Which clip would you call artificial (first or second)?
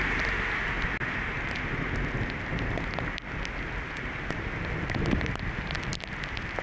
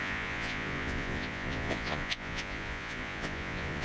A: second